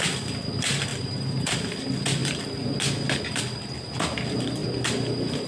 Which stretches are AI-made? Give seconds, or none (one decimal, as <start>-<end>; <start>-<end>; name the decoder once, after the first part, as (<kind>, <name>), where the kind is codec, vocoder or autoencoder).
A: 0.9-1.5 (vocoder, BigVGAN v2)